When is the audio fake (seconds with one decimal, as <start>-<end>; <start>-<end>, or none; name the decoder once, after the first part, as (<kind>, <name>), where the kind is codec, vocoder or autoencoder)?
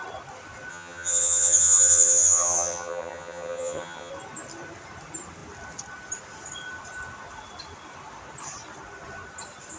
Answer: 0.7-4.1 (vocoder, HiFi-GAN)